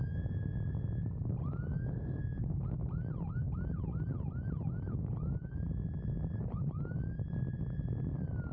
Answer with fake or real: real